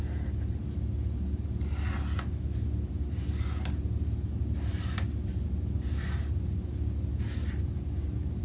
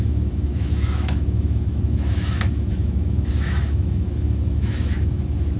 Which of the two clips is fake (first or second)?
second